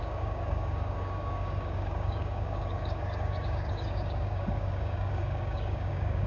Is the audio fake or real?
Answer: fake